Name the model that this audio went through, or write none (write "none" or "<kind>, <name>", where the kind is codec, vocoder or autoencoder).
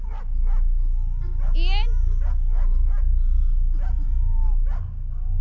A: none